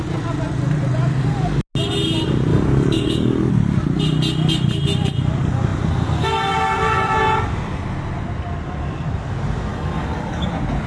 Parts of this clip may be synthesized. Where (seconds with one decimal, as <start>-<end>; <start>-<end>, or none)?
2.5-3.5; 9.7-10.5

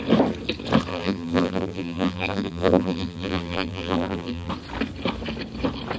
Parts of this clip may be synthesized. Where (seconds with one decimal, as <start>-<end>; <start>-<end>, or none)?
0.9-4.5

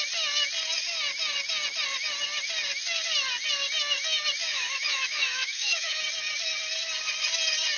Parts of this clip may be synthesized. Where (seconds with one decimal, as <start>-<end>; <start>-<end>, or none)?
4.5-6.0

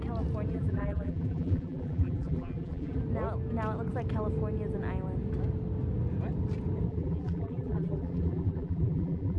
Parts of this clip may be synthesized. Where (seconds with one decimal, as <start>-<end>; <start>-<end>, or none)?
0.5-3.0; 6.9-9.4

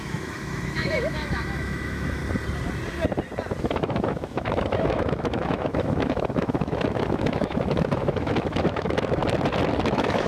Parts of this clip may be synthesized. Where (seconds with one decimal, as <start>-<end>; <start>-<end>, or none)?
0.0-2.2; 3.6-9.2; 9.9-10.3